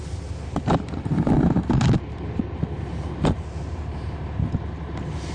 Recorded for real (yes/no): yes